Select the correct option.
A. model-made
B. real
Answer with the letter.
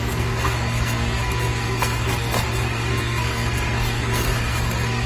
A